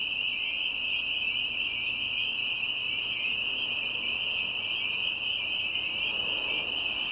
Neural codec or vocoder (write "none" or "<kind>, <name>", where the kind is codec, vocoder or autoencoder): none